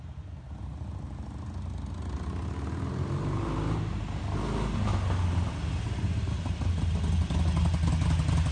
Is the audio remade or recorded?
recorded